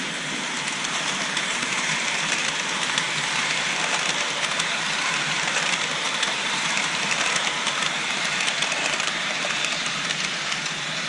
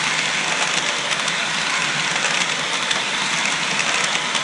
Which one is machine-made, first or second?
first